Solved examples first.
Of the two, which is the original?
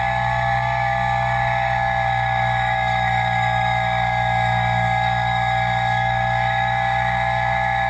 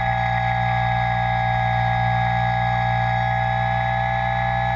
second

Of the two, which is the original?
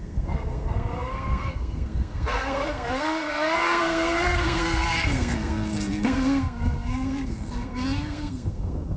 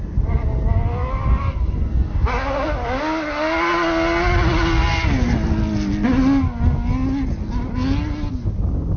second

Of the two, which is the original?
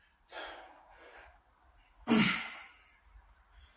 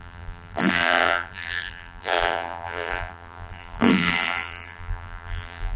first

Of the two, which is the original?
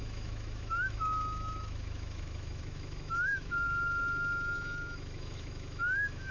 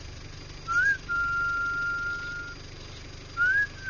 second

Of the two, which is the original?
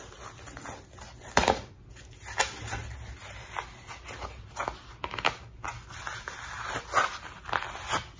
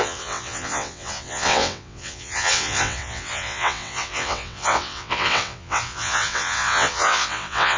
first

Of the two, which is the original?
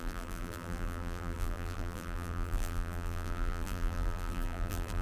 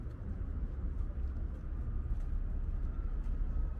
second